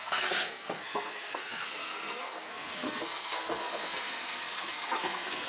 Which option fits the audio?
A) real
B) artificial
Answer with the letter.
B